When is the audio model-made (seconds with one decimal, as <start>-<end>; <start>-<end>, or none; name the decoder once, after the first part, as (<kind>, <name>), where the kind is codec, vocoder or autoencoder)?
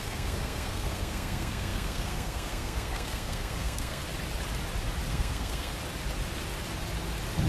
0.0-4.0 (codec, SNAC); 5.1-5.7